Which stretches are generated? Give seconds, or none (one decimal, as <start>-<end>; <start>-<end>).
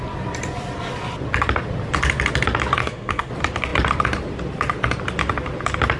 2.8-3.3